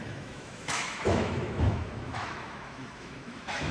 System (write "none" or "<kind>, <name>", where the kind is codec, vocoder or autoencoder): autoencoder, DAC-VAE